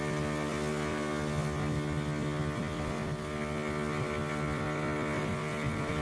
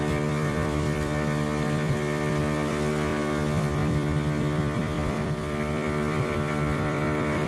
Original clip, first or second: first